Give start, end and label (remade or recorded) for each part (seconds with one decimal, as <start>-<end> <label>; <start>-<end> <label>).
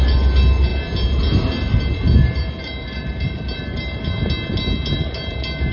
0.0-5.7 recorded